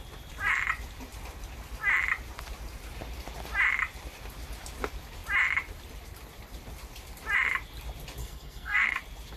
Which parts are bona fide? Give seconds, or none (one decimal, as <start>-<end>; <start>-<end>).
0.0-8.2; 9.0-9.4